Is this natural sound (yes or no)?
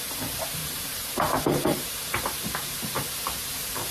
no